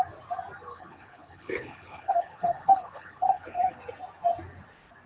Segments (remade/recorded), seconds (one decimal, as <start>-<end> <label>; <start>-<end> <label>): 0.0-0.7 recorded; 0.7-3.8 remade; 3.8-5.1 recorded